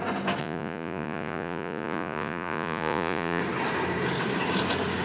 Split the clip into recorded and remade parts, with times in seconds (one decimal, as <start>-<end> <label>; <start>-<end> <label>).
0.0-0.4 recorded; 0.4-3.4 remade; 3.4-5.0 recorded